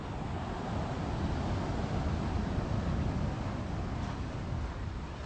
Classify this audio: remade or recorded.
recorded